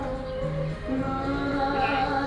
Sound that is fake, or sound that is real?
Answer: real